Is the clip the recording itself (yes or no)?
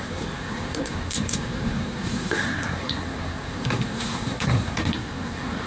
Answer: no